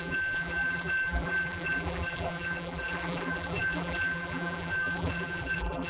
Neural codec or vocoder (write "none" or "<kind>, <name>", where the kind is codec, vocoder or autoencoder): vocoder, BigVGAN v2